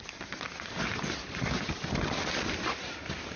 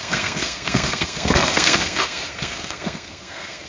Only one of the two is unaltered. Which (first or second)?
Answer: first